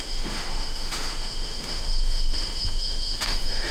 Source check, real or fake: fake